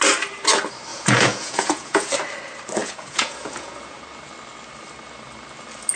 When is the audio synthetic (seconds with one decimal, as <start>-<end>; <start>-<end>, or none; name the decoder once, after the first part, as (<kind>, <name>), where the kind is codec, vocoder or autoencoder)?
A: 0.9-2.1 (vocoder, Vocos); 2.8-3.8